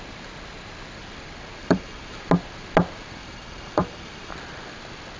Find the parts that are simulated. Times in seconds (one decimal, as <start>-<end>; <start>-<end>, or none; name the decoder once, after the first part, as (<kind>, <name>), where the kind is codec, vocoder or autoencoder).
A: 1.6-2.2 (vocoder, BigVGAN v2); 3.2-4.3